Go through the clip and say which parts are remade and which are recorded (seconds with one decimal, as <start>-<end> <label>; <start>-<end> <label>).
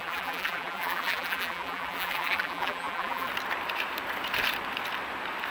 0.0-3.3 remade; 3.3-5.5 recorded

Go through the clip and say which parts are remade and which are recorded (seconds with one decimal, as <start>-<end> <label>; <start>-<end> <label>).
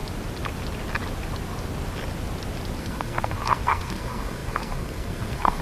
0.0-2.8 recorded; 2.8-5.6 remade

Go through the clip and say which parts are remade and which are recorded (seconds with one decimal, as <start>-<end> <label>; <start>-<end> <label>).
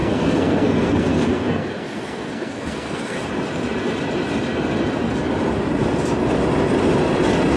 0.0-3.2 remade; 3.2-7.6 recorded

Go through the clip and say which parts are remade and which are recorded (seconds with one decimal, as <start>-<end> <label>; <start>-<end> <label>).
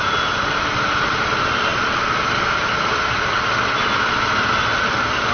0.0-5.3 recorded